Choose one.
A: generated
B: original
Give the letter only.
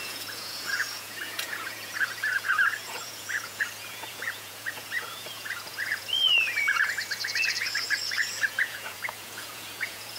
A